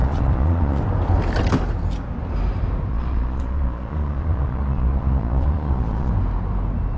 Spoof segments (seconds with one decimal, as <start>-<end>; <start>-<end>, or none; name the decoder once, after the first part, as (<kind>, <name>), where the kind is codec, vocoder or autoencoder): 0.0-0.8 (vocoder, Vocos); 2.9-6.1